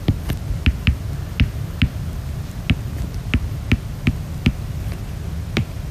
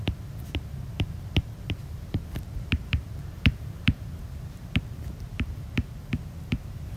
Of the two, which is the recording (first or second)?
first